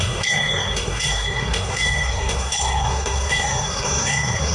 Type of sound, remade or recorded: remade